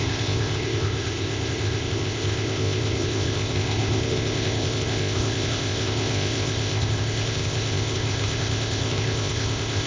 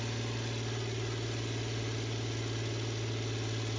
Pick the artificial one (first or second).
first